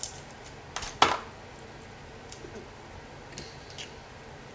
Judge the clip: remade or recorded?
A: recorded